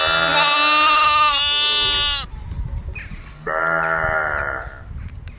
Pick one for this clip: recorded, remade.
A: recorded